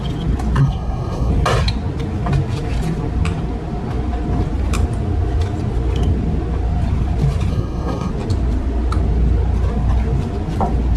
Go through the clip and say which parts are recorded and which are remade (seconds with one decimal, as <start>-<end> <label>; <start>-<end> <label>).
0.0-0.6 recorded; 0.6-1.3 remade; 1.3-7.5 recorded; 7.5-8.1 remade; 8.1-11.0 recorded